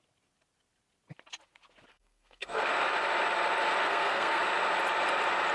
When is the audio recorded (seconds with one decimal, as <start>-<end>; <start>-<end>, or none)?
0.0-1.9; 2.7-3.8; 4.4-5.5